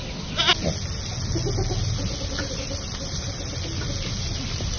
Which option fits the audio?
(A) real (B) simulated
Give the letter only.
A